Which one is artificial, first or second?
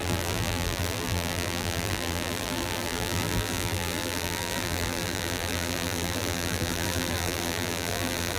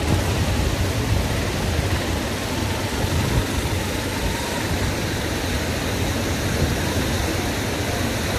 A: first